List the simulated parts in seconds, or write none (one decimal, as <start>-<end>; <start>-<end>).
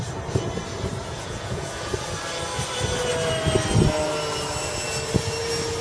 1.0-2.0